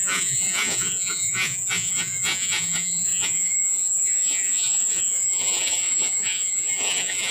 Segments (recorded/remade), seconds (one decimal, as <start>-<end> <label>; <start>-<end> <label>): 0.0-7.3 remade